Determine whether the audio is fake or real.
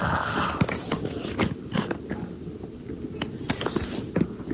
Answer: real